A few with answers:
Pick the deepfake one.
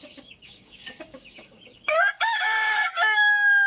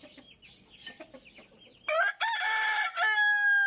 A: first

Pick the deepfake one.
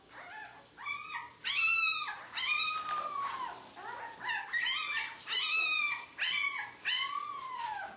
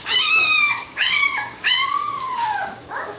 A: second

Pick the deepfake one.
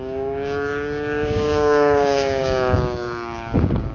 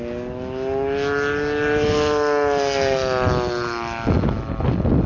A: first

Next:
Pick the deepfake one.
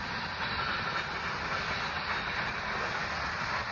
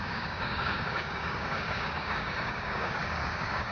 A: second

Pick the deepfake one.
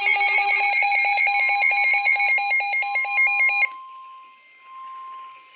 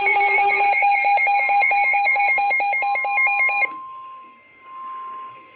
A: second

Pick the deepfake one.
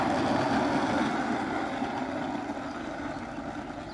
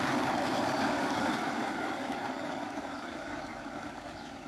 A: second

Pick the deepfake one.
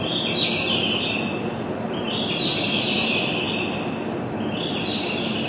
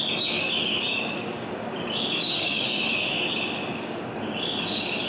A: second